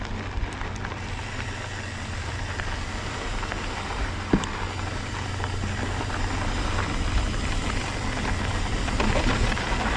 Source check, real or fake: real